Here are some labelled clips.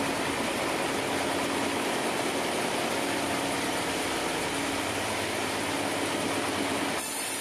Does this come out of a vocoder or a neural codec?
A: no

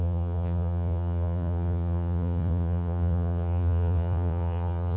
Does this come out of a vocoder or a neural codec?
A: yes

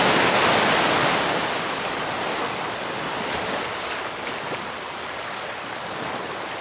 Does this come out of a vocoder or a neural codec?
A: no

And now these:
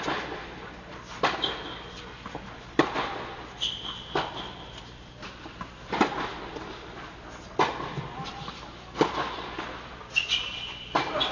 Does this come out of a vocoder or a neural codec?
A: no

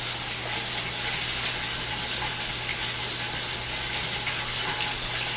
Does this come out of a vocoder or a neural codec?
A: no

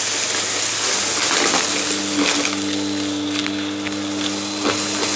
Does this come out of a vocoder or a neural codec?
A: no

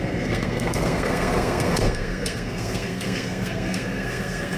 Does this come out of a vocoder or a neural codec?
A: yes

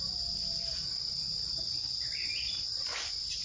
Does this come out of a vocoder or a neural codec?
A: no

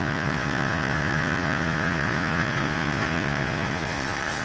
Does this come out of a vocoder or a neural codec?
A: yes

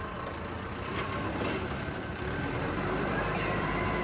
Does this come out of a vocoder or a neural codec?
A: yes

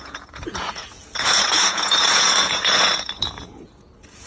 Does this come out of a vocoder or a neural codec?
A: yes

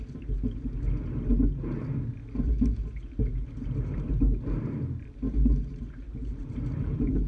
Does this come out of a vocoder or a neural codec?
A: no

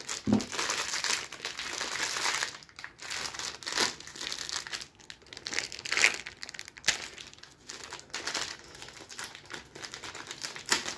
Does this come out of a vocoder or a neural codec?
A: no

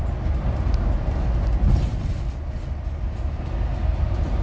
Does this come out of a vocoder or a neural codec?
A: no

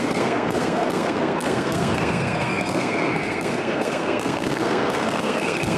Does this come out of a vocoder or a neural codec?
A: yes